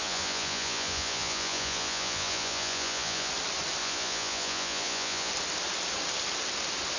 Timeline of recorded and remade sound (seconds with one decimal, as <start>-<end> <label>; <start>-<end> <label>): 0.0-3.3 remade; 3.3-3.8 recorded; 3.8-5.3 remade; 5.3-7.0 recorded